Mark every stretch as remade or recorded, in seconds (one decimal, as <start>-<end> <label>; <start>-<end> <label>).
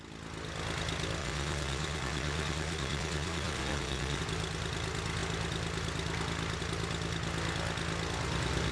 0.0-1.2 recorded; 1.2-4.2 remade; 4.2-8.7 recorded